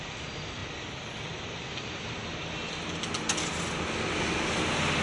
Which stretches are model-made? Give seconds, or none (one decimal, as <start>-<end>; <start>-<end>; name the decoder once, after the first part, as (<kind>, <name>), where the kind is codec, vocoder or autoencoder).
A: none